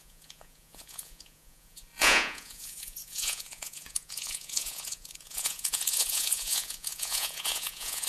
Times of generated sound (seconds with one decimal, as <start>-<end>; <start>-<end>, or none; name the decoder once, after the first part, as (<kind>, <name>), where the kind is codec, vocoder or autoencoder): 0.0-8.1 (vocoder, Vocos)